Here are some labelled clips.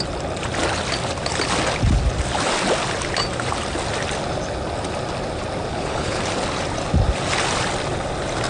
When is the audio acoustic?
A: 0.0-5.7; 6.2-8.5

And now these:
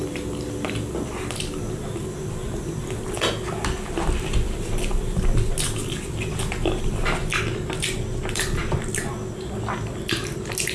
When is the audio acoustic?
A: 0.0-10.7

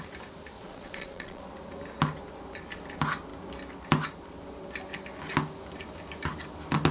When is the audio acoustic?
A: 0.0-0.6; 1.4-6.9

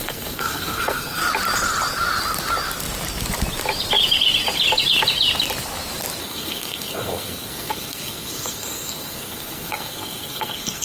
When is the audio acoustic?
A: 1.2-6.2

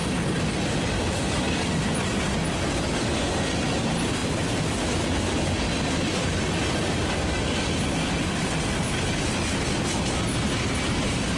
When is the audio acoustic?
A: 0.0-11.4